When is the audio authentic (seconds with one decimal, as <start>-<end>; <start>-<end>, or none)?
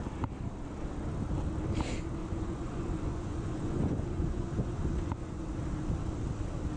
0.0-2.2; 5.4-6.8